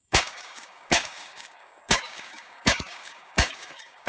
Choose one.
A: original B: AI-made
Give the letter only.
B